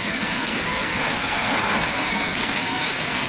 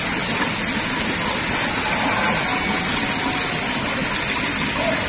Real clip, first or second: second